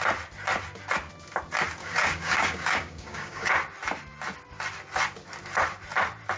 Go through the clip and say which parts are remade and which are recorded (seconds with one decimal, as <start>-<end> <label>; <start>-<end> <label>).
0.0-1.8 recorded; 1.8-3.5 remade; 3.5-6.4 recorded